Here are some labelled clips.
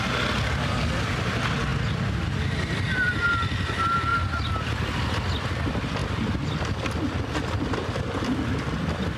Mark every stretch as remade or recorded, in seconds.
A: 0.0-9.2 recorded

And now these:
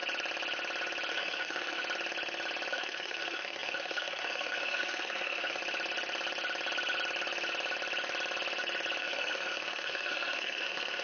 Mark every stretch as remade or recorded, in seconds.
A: 0.0-1.1 recorded; 1.1-1.8 remade; 1.8-2.7 recorded; 2.7-5.6 remade; 5.6-9.0 recorded; 9.0-11.0 remade

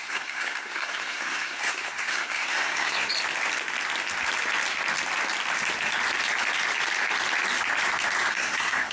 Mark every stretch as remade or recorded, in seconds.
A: 0.0-3.1 remade; 3.1-8.3 recorded; 8.3-8.9 remade

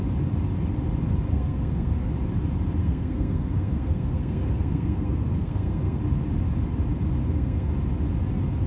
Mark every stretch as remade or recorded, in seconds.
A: 0.0-1.3 recorded; 1.3-2.1 remade; 2.1-2.8 recorded; 2.8-6.0 remade; 6.0-7.2 recorded; 7.2-7.7 remade; 7.7-8.7 recorded

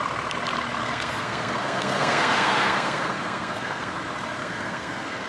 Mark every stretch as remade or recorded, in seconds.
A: 0.0-0.8 recorded; 0.8-4.0 remade; 4.0-4.4 recorded; 4.4-5.3 remade